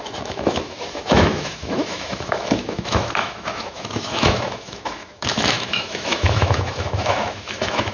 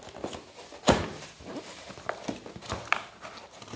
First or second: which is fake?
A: first